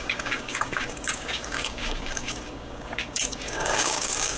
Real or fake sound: fake